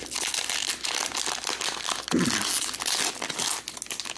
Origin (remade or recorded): recorded